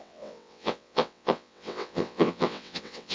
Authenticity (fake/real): fake